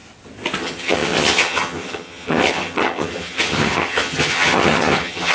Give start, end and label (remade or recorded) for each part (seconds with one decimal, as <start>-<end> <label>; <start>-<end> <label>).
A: 0.0-0.6 recorded; 0.6-5.3 remade